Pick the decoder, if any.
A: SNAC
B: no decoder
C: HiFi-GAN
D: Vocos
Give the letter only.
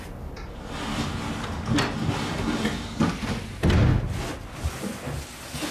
B